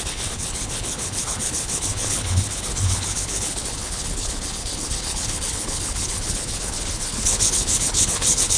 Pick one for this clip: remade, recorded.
remade